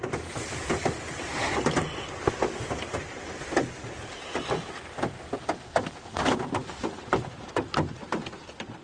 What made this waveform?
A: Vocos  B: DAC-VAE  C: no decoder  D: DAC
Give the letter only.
C